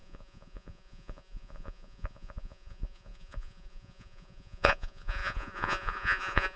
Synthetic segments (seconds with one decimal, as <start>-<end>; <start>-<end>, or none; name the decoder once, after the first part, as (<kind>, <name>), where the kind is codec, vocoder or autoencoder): 0.0-6.6 (vocoder, Vocos)